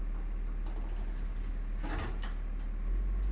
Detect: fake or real real